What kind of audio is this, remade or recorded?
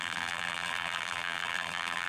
remade